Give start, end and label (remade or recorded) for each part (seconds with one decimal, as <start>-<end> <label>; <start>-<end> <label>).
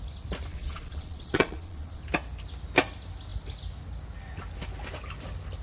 0.0-0.5 recorded; 0.5-2.0 remade; 2.0-5.6 recorded